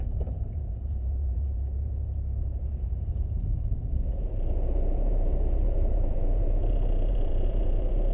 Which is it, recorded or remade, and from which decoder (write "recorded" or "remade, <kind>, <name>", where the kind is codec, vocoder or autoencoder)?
remade, vocoder, Vocos